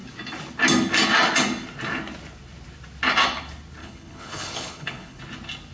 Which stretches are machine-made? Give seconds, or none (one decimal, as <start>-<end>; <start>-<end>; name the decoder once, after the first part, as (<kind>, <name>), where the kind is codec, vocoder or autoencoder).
3.8-5.2 (codec, HILCodec)